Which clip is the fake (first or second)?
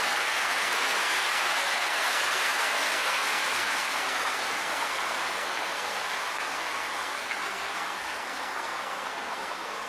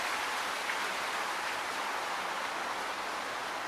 first